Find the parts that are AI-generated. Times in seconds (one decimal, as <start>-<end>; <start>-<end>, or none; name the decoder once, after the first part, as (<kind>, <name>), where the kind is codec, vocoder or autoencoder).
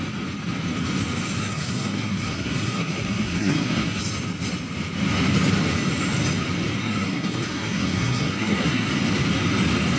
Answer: 1.4-4.0 (codec, SNAC); 6.8-8.9